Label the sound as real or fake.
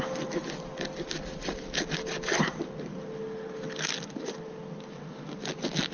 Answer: real